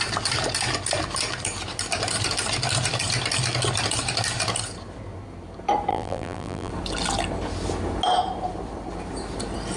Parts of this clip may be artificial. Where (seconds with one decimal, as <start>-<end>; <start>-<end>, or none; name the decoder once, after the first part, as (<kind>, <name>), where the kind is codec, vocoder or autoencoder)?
5.9-6.7 (vocoder, BigVGAN v2)